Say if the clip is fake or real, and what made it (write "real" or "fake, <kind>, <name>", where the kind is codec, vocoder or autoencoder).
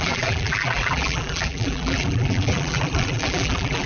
fake, vocoder, BigVGAN v2